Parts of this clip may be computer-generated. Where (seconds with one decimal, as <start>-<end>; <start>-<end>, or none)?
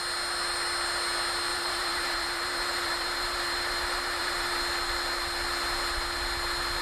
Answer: 1.5-4.6